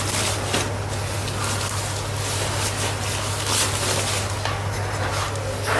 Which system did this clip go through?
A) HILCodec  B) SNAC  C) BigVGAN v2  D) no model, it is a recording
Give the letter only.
D